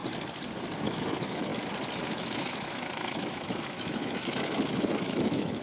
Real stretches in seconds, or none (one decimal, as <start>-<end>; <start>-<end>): 0.0-0.8; 1.5-2.1